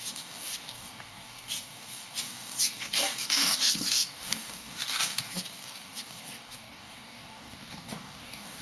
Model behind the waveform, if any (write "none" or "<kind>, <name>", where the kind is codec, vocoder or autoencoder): codec, DAC